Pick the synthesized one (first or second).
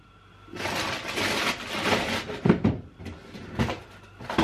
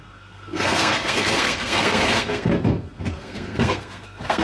second